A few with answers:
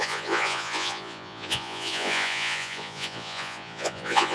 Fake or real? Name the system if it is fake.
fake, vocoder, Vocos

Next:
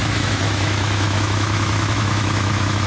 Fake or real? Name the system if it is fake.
fake, autoencoder, DAC-VAE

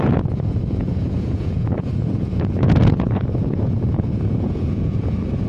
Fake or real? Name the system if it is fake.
fake, vocoder, Vocos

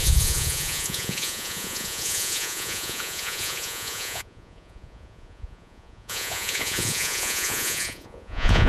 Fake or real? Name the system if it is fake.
fake, vocoder, Vocos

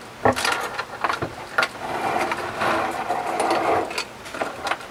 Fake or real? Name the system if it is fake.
fake, vocoder, BigVGAN v2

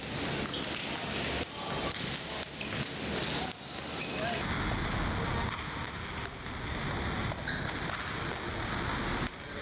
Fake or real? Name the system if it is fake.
real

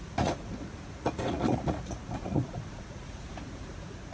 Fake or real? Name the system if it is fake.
fake, vocoder, Vocos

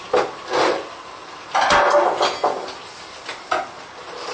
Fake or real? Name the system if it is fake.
real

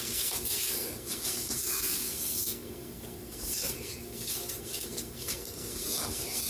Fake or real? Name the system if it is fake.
fake, codec, SNAC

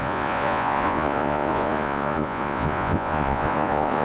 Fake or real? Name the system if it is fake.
fake, vocoder, Vocos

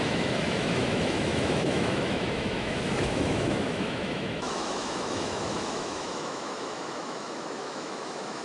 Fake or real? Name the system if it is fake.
fake, autoencoder, DAC-VAE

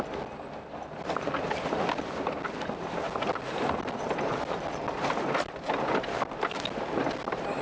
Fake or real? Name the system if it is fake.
real